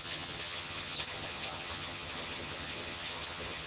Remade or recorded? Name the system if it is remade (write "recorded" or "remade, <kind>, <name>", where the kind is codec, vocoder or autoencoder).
remade, vocoder, HiFi-GAN